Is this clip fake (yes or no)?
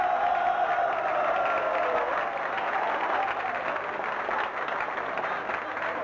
no